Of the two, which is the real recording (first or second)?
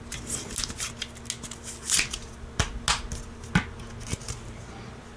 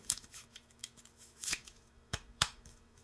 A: first